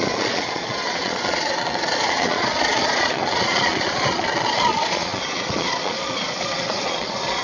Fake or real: fake